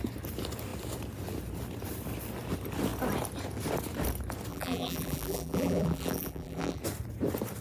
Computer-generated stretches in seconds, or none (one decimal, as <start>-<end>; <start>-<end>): 4.5-6.8